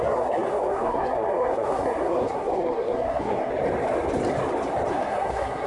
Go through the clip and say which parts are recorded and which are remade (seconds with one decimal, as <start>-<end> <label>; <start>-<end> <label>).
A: 0.0-3.5 remade; 3.5-4.9 recorded; 4.9-5.7 remade